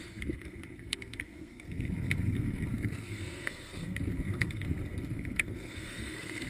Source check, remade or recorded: remade